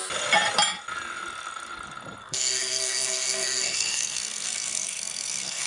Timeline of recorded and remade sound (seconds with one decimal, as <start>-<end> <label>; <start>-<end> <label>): 0.0-2.2 recorded; 2.2-5.7 remade